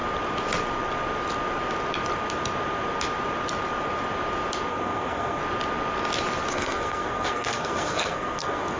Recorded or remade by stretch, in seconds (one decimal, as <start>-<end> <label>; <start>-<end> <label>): 0.0-4.7 recorded; 4.7-5.4 remade; 5.4-6.5 recorded; 6.5-8.8 remade